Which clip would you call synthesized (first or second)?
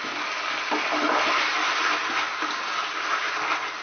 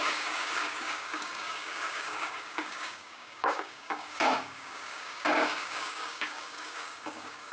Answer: second